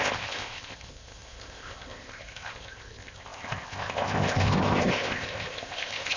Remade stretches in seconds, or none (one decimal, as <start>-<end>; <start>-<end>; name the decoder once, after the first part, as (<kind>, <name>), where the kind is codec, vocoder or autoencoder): 0.0-6.2 (codec, ZipCodec)